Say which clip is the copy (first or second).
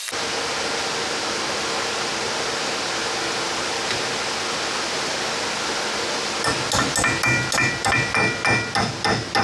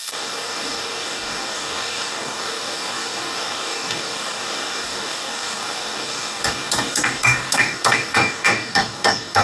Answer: second